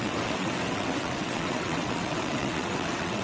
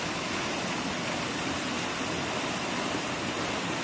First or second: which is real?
second